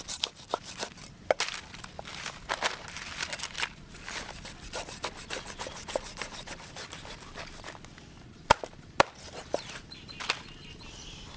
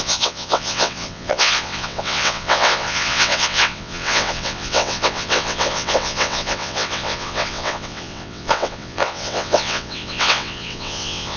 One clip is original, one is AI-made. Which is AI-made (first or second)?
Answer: second